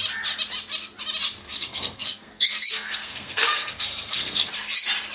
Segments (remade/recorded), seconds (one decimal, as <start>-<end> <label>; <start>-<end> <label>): 0.0-1.4 recorded; 1.4-4.5 remade; 4.5-5.1 recorded